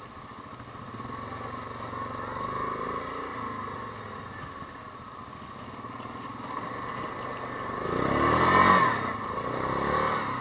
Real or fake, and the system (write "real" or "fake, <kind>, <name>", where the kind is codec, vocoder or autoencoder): real